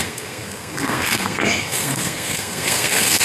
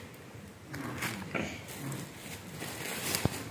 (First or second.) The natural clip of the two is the second